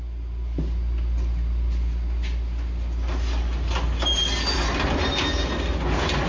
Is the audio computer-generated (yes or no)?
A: no